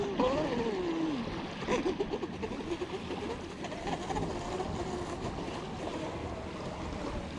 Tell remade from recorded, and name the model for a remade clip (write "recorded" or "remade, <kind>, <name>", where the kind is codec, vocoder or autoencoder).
recorded